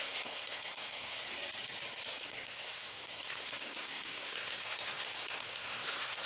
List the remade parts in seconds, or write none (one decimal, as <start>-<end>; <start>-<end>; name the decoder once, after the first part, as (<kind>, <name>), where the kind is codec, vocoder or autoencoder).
0.0-1.3 (codec, SNAC); 2.2-6.3